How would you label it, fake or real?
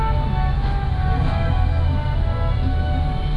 real